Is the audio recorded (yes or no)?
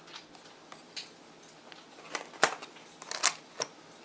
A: yes